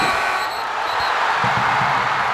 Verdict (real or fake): real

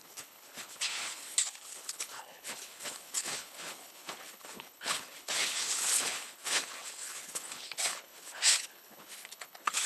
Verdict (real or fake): fake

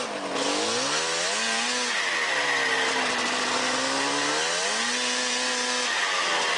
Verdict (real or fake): real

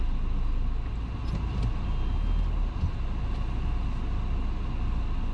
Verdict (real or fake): real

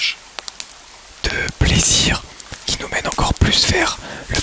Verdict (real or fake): real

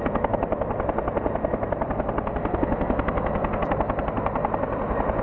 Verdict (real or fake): real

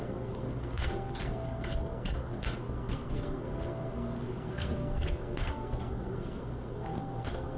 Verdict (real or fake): fake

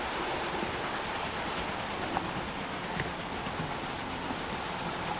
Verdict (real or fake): real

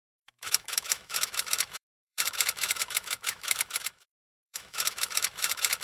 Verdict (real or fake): fake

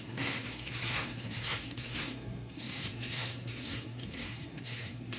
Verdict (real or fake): fake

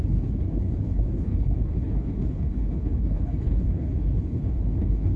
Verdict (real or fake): fake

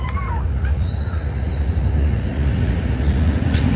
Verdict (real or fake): fake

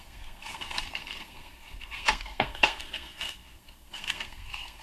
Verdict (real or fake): fake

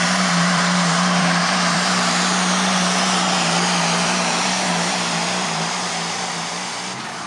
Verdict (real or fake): fake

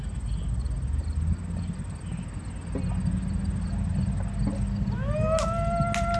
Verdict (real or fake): real